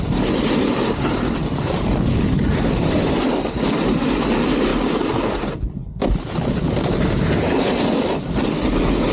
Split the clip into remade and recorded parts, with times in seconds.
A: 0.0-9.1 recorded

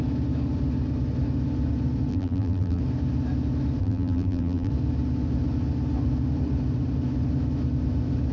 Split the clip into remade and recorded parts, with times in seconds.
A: 0.0-2.1 recorded; 2.1-2.8 remade; 2.8-3.8 recorded; 3.8-4.7 remade; 4.7-8.3 recorded

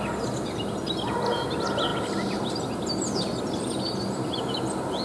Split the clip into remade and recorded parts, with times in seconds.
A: 0.0-1.9 recorded; 1.9-5.0 remade

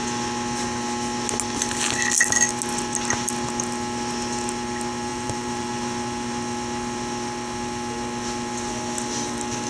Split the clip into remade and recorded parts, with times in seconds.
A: 0.0-5.1 recorded; 5.1-5.7 remade; 5.7-9.7 recorded